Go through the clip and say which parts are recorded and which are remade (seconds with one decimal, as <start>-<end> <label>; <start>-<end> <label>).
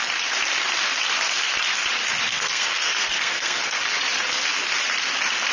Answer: 0.0-2.3 recorded; 2.3-3.8 remade; 3.8-5.5 recorded